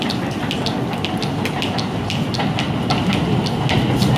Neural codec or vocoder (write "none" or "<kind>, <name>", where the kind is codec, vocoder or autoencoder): none